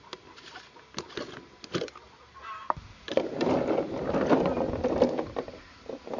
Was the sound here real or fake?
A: real